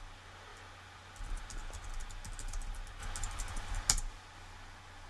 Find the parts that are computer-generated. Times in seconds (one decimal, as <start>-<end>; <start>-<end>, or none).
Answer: none